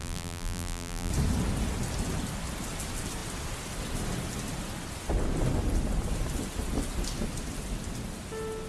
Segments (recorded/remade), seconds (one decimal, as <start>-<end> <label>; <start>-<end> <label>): 0.0-1.1 remade; 1.1-8.7 recorded